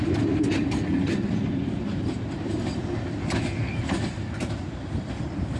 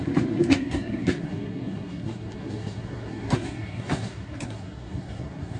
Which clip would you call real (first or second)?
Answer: first